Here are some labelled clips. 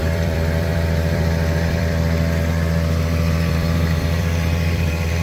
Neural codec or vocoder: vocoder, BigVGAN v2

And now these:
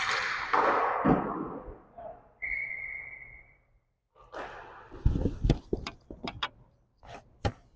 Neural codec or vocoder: vocoder, BigVGAN v2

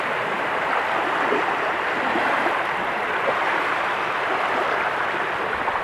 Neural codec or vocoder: vocoder, BigVGAN v2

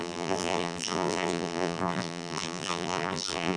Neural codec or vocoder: vocoder, BigVGAN v2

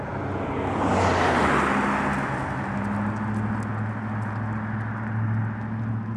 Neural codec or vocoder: none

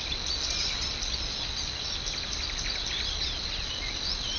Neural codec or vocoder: vocoder, BigVGAN v2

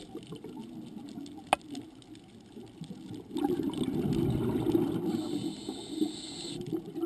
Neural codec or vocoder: none